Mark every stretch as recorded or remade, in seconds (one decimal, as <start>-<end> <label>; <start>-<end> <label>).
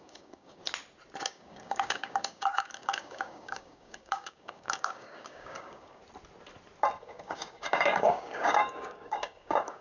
0.0-0.6 remade; 0.6-1.2 recorded; 1.2-6.0 remade; 6.0-7.0 recorded; 7.0-9.8 remade